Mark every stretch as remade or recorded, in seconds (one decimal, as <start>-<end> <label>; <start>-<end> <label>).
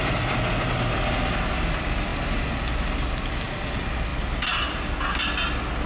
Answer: 0.0-5.9 recorded